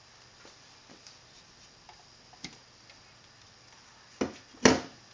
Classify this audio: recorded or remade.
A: recorded